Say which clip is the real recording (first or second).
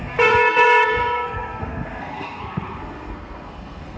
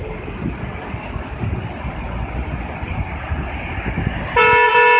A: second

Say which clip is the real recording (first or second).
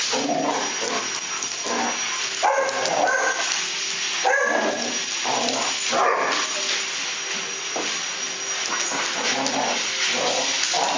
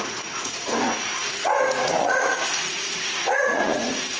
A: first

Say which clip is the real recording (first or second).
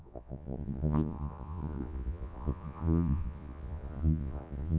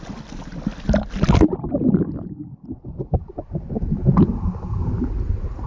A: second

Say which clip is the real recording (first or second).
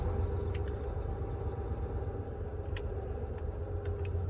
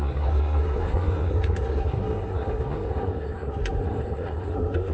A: first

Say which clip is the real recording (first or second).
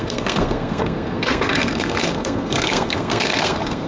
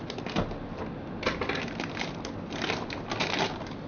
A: second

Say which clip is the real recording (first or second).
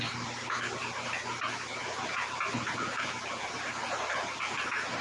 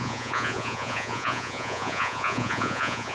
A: first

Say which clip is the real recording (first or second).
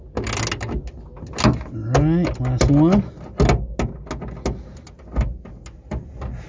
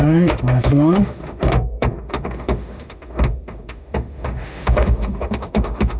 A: first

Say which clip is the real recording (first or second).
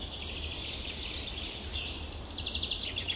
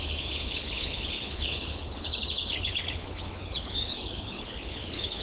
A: first